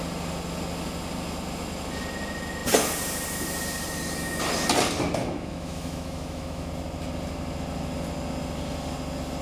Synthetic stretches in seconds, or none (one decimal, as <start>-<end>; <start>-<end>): 5.2-6.7